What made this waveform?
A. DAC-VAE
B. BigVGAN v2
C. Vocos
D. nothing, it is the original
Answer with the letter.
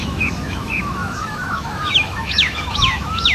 A